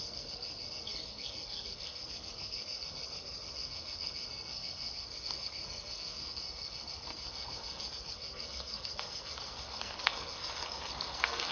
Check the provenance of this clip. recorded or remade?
remade